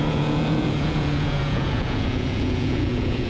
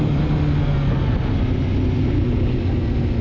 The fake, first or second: first